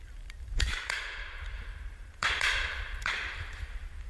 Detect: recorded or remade remade